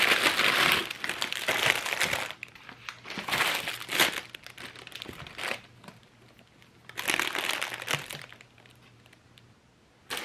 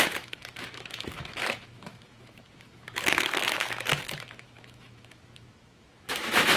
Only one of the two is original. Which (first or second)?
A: first